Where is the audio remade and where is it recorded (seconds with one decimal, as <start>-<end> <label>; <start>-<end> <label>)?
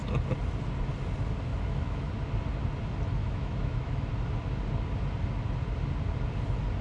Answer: 0.0-1.5 recorded; 1.5-2.1 remade; 2.1-3.2 recorded; 3.2-4.1 remade; 4.1-6.8 recorded